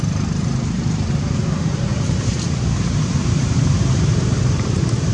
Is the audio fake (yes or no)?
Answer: yes